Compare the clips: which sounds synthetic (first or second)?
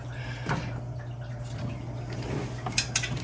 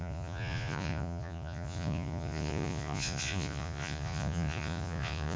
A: second